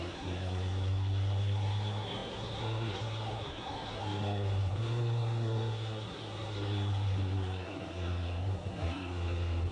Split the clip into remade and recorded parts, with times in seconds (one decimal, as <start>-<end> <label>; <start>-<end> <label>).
0.0-9.7 remade

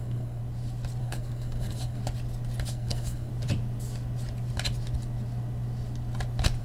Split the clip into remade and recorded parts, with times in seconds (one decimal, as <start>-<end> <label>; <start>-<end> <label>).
0.0-0.4 remade; 0.4-1.0 recorded; 1.0-2.0 remade; 2.0-2.7 recorded; 2.7-3.3 remade; 3.3-6.6 recorded